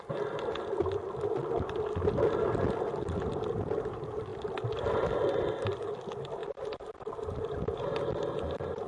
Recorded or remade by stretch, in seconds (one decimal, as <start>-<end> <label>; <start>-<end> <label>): 0.0-8.9 recorded